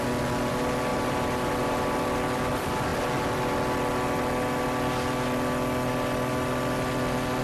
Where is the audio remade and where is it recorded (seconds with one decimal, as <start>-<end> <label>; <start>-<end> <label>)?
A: 0.0-0.9 recorded; 0.9-1.5 remade; 1.5-7.4 recorded